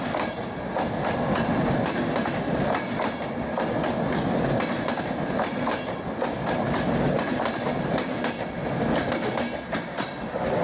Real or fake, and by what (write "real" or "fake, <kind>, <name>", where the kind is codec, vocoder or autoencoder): real